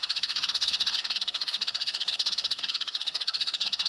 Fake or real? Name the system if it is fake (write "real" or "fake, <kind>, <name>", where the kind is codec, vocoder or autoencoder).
fake, codec, SNAC